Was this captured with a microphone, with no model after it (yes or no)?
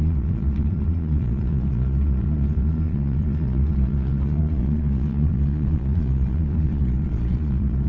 no